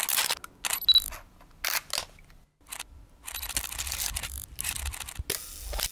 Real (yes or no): yes